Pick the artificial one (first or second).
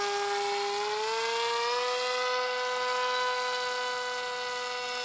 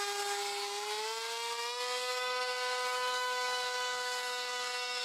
second